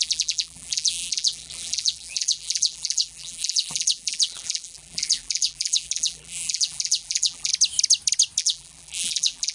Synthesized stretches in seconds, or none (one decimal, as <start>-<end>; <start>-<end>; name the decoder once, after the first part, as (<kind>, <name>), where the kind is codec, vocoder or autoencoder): 0.0-7.5 (vocoder, BigVGAN v2); 8.4-9.5